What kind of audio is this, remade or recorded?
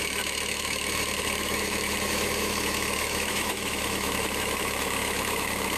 remade